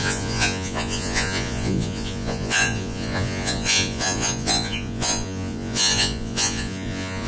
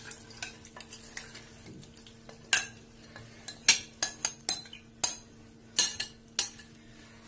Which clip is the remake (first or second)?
first